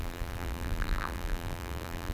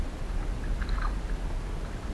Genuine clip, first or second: second